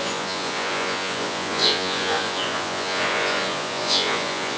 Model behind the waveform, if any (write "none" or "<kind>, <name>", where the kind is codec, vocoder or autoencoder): vocoder, Vocos